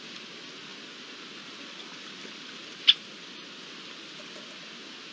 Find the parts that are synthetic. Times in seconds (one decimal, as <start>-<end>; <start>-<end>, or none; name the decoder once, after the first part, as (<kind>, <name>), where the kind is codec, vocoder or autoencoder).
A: none